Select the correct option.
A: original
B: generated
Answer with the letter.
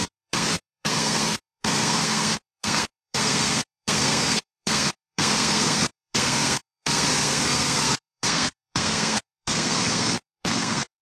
B